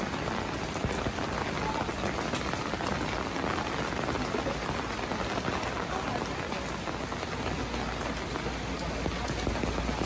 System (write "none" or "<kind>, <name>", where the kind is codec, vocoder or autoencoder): none